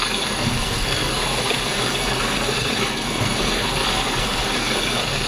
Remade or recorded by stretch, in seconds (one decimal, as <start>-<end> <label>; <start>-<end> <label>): 0.0-5.3 remade